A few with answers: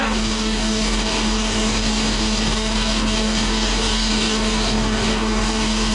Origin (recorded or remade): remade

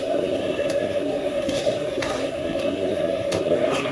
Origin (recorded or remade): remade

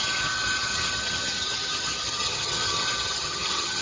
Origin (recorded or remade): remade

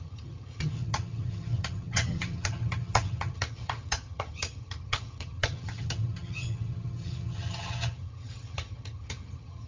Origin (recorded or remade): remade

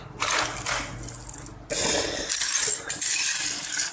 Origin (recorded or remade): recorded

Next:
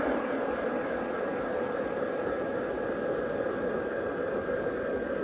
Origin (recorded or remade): recorded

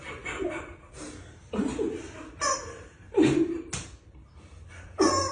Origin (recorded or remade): recorded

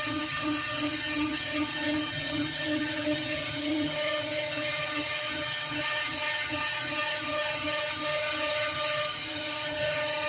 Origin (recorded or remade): remade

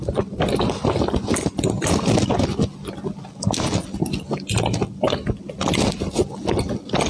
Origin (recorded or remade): recorded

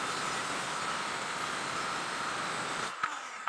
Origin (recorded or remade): recorded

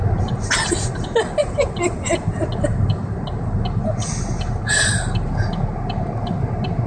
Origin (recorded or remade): recorded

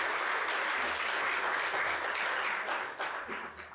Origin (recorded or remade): recorded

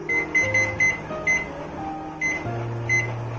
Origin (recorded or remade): recorded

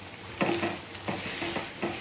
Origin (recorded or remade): recorded